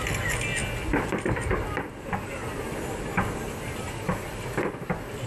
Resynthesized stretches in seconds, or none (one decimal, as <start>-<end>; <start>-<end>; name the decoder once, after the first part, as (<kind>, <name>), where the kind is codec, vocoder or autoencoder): none